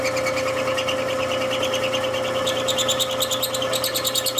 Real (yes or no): yes